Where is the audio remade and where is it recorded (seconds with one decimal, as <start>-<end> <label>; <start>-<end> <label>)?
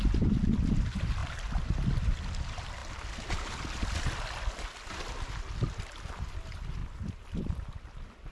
0.0-1.2 recorded; 1.2-2.0 remade; 2.0-6.8 recorded; 6.8-8.3 remade